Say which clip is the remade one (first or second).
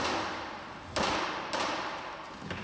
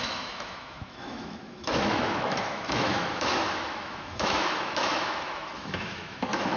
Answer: second